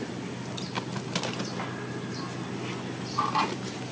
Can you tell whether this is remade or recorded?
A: recorded